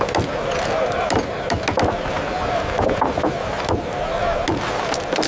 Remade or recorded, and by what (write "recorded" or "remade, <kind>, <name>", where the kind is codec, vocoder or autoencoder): recorded